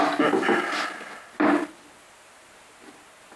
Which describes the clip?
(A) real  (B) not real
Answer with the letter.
A